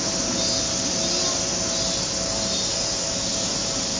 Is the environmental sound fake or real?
real